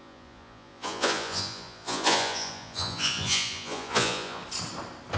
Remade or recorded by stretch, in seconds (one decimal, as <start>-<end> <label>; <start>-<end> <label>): 0.0-4.4 remade; 4.4-5.2 recorded